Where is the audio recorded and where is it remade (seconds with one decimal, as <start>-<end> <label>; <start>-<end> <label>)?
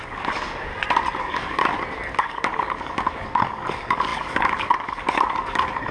0.0-0.7 remade; 0.7-1.2 recorded; 1.2-1.6 remade; 1.6-2.2 recorded; 2.2-5.9 remade